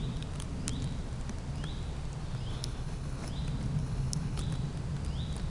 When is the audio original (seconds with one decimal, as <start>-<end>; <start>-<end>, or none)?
0.0-2.5; 3.3-3.8; 4.4-5.5